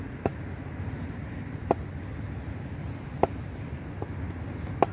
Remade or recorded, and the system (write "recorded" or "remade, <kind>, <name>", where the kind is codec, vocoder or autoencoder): recorded